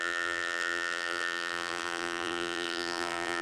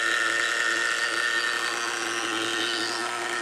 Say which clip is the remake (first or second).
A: first